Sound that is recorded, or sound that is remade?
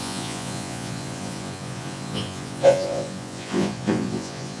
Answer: remade